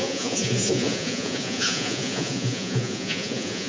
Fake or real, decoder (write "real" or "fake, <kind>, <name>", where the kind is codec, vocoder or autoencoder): fake, vocoder, Vocos